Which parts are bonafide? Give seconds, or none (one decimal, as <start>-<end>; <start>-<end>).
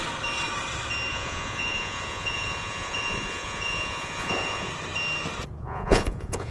0.0-1.1; 4.7-5.6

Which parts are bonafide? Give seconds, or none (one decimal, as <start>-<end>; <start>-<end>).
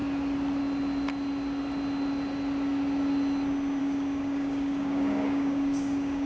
0.0-3.8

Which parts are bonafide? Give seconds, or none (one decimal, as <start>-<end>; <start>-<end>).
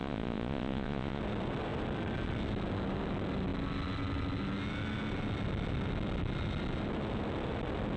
1.2-8.0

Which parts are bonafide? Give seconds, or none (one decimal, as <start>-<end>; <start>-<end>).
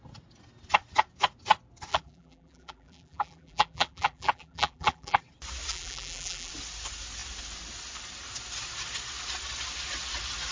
0.0-1.9; 5.2-5.7; 6.5-10.5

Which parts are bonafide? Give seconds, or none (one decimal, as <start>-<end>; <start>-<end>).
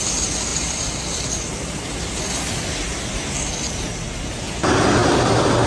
0.0-0.5; 2.2-5.0